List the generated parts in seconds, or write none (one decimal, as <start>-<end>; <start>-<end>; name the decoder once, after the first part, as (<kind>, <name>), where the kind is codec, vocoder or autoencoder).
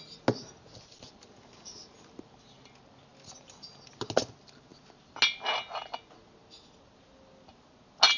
none